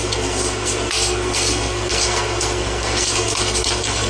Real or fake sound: fake